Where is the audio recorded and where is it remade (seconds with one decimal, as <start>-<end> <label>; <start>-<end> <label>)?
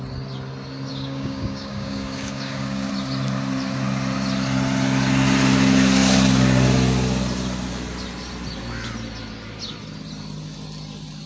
0.0-0.9 recorded; 0.9-2.9 remade; 2.9-11.3 recorded